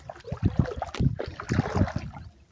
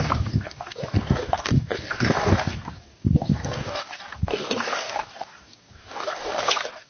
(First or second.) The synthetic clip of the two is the second